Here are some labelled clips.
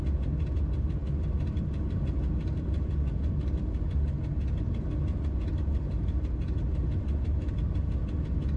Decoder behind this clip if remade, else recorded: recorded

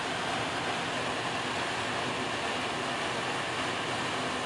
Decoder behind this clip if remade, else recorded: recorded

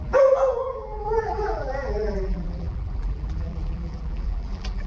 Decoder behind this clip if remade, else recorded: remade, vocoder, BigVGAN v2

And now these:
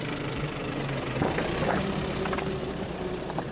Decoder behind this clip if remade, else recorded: remade, vocoder, BigVGAN v2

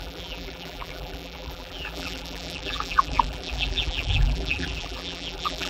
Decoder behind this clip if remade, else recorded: remade, vocoder, BigVGAN v2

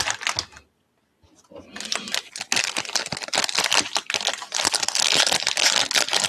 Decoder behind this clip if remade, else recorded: recorded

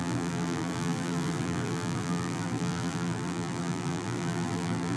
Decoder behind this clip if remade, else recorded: remade, vocoder, BigVGAN v2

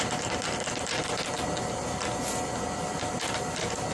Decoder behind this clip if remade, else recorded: recorded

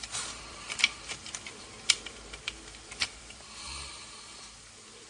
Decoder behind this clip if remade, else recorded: remade, vocoder, BigVGAN v2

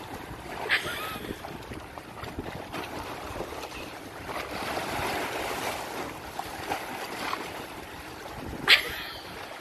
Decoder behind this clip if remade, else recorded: remade, vocoder, BigVGAN v2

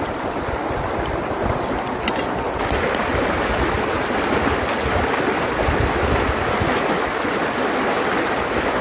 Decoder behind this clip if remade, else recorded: recorded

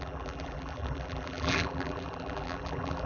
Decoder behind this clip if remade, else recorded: remade, vocoder, BigVGAN v2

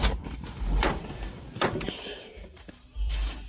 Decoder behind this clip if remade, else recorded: remade, vocoder, BigVGAN v2